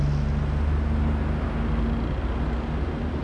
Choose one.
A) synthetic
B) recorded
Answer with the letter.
B